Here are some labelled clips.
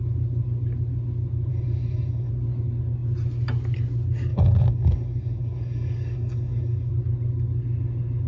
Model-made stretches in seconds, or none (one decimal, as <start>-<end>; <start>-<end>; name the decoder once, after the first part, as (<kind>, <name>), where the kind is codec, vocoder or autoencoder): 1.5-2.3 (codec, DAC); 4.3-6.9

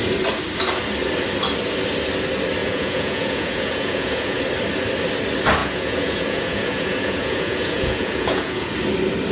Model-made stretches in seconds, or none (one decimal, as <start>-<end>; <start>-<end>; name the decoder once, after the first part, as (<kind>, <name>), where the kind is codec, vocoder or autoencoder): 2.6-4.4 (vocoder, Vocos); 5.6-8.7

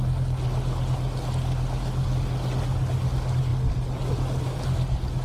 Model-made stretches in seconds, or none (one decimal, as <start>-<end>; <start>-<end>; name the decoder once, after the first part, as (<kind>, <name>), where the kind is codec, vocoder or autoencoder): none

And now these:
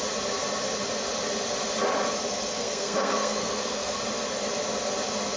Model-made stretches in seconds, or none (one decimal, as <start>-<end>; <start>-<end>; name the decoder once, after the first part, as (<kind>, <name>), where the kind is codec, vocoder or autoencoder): 2.6-4.0 (codec, SNAC)

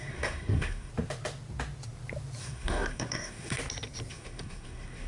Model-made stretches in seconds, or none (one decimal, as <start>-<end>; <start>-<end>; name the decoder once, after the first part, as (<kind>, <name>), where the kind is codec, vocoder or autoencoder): 0.0-0.9 (codec, SNAC); 2.4-3.6; 4.1-5.1

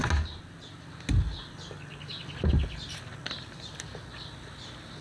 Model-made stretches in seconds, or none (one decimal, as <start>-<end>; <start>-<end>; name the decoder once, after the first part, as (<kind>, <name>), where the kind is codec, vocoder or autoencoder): none

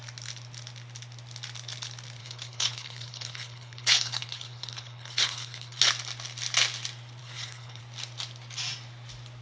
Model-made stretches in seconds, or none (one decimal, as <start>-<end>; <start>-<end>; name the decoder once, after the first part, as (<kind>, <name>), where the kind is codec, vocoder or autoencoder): 2.2-5.8 (codec, HILCodec); 7.2-7.8

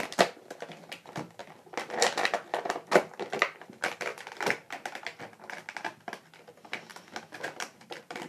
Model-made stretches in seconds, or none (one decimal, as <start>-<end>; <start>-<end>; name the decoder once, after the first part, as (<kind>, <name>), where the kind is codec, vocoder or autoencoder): 0.0-1.4 (vocoder, BigVGAN v2); 1.9-4.1; 6.5-6.9; 7.6-8.3